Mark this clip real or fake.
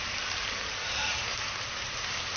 fake